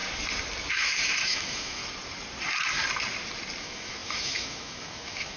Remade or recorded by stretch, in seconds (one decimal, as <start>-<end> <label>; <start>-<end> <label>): 0.0-0.7 recorded; 0.7-1.8 remade; 1.8-3.6 recorded; 3.6-5.4 remade